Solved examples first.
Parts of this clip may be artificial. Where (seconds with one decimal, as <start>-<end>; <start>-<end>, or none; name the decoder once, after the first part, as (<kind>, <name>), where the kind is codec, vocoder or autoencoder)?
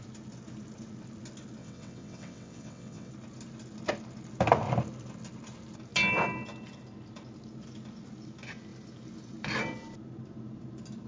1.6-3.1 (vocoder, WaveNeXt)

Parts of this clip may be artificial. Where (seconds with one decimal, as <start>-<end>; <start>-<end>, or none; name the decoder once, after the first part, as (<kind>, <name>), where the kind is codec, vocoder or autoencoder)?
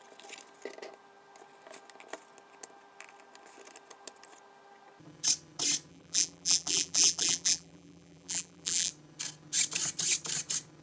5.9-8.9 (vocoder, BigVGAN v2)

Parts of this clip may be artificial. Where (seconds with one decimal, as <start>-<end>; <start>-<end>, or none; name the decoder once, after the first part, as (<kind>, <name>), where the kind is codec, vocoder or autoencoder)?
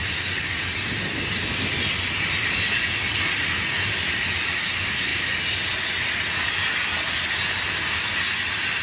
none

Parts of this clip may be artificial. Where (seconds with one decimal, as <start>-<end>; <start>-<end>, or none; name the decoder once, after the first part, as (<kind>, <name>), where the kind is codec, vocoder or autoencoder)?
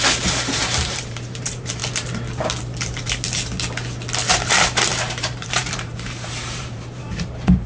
0.0-1.8 (vocoder, BigVGAN v2); 4.3-7.7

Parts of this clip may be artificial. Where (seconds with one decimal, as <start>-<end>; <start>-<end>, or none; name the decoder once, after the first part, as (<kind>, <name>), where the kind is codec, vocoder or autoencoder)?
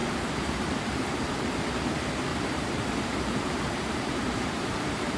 0.0-1.6 (vocoder, BigVGAN v2); 2.3-5.2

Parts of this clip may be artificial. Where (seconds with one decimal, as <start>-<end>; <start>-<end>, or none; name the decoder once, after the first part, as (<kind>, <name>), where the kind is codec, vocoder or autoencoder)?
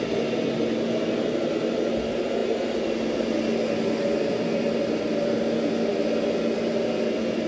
4.1-5.0 (vocoder, BigVGAN v2)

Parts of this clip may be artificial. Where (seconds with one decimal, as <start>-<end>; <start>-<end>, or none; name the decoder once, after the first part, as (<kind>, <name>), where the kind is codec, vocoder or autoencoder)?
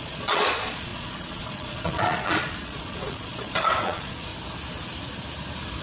0.0-4.3 (vocoder, Vocos)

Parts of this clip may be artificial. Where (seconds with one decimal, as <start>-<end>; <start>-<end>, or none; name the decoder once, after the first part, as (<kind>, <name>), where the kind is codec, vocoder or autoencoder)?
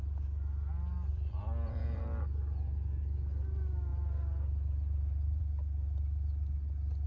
1.1-2.0 (vocoder, BigVGAN v2)